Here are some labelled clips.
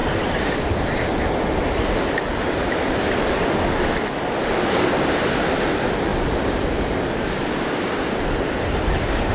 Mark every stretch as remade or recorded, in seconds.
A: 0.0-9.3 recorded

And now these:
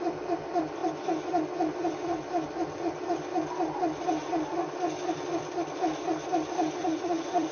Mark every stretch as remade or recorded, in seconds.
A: 0.0-6.8 recorded; 6.8-7.5 remade

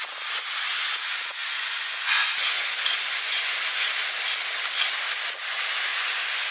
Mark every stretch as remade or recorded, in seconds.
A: 0.0-0.7 recorded; 0.7-4.0 remade; 4.0-5.9 recorded; 5.9-6.5 remade

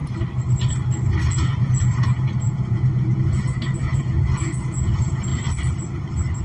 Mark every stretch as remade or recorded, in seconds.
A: 0.0-1.3 recorded; 1.3-5.3 remade; 5.3-6.4 recorded